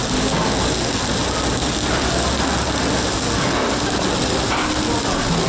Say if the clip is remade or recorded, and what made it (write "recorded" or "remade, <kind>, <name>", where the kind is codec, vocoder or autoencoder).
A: recorded